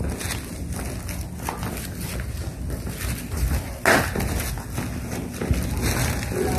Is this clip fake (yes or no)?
no